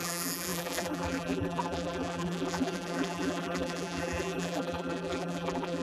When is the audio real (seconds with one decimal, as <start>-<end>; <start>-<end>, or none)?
none